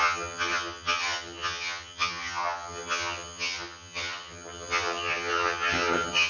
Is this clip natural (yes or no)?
no